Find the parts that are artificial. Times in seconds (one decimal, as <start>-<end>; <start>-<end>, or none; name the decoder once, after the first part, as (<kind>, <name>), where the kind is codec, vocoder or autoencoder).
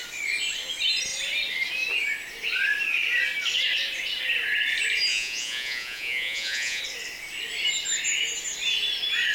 5.1-6.8 (vocoder, Vocos)